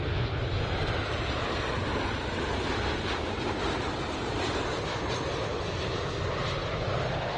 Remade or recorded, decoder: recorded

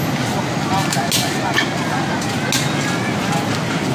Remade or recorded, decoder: recorded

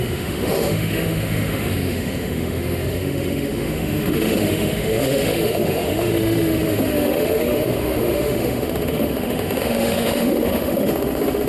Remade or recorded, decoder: remade, autoencoder, DAC-VAE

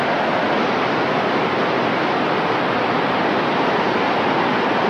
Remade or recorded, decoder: recorded